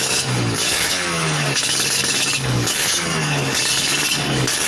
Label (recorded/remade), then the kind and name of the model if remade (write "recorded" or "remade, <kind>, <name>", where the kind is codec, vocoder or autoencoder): remade, codec, DAC